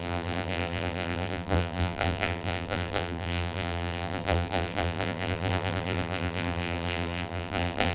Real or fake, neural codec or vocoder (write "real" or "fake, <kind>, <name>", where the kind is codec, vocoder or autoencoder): fake, vocoder, BigVGAN v2